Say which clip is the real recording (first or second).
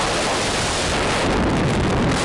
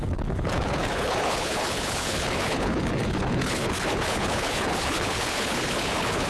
first